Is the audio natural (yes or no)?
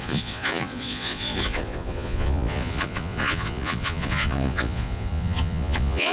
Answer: no